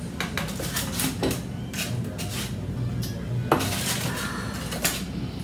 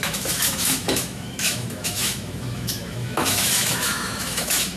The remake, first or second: second